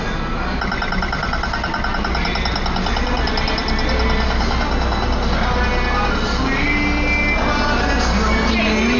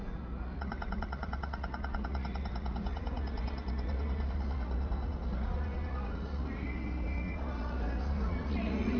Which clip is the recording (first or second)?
first